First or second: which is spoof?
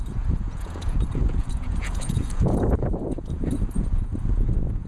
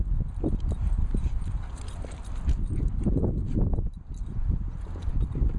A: first